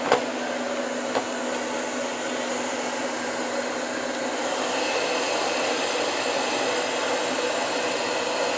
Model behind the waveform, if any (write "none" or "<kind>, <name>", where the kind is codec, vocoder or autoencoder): none